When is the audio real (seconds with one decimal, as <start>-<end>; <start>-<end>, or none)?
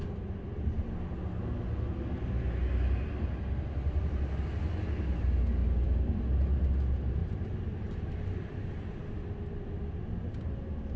0.0-5.6; 6.2-7.2; 10.4-11.0